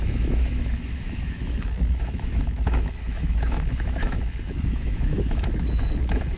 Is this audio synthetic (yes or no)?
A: yes